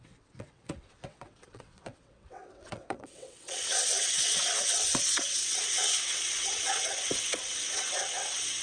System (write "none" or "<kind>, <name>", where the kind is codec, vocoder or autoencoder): vocoder, WaveNeXt